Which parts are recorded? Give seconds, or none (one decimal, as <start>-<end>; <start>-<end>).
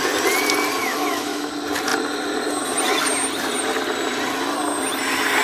0.0-0.8; 1.5-5.4